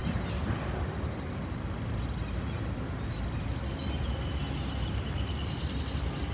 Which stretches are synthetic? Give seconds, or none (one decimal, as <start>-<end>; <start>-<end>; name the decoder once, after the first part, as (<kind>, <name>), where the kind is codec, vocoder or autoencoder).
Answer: none